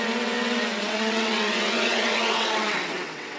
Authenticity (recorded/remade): remade